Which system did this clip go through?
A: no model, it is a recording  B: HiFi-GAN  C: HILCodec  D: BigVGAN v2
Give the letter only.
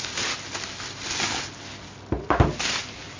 A